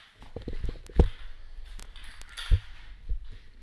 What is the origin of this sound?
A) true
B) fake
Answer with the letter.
A